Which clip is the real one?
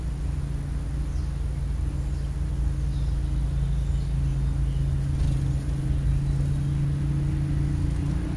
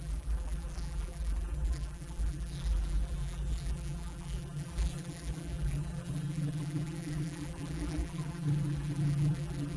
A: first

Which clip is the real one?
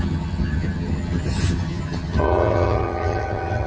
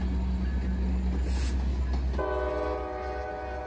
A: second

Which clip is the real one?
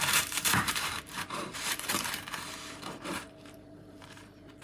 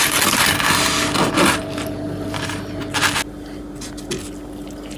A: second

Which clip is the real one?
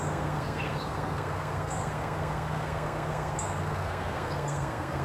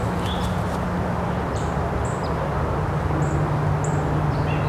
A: second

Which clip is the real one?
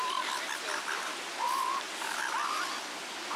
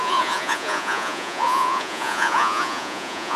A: first